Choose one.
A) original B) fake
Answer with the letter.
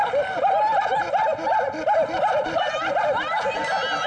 A